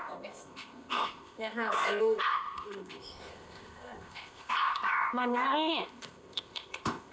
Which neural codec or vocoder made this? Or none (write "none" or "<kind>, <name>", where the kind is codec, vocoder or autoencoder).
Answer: codec, ZipCodec